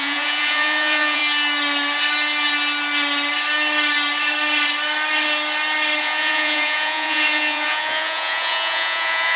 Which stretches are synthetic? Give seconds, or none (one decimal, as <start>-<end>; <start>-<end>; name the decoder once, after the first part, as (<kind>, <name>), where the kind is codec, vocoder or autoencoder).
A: 0.0-1.2 (vocoder, Vocos); 6.0-9.4